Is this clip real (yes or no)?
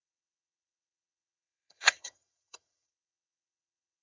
no